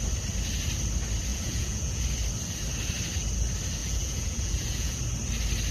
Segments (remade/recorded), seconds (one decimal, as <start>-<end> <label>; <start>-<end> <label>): 0.0-1.3 recorded; 1.3-2.0 remade; 2.0-3.8 recorded; 3.8-5.0 remade; 5.0-5.7 recorded